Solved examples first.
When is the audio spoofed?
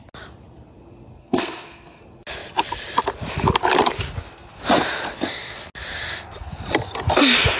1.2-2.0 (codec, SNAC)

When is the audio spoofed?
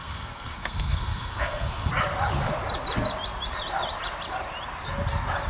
0.0-1.9 (codec, SNAC)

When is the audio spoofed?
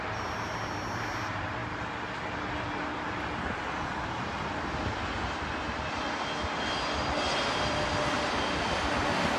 none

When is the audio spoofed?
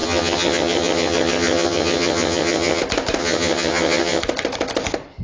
0.0-2.8 (vocoder, HiFi-GAN); 3.2-4.2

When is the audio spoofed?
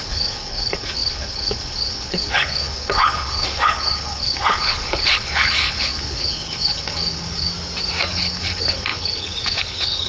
0.0-7.5 (codec, HILCodec); 8.1-10.1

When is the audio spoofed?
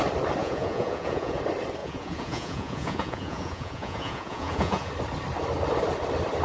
0.4-1.4 (vocoder, Vocos); 1.8-4.9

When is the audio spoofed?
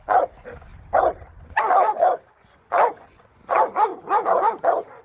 0.0-0.7 (vocoder, Vocos); 1.4-5.0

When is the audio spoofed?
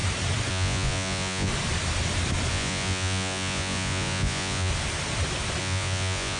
0.5-1.5 (vocoder, Vocos); 2.5-4.7; 5.6-6.4